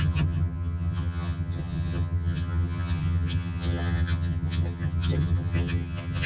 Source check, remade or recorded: remade